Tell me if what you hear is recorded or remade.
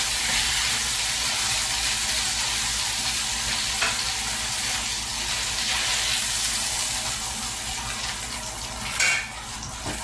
recorded